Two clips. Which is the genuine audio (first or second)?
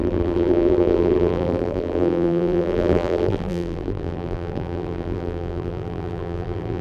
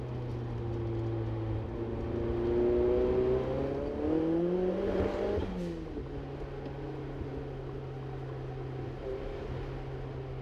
second